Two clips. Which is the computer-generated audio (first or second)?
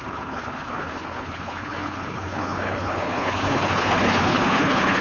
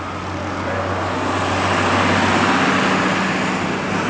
first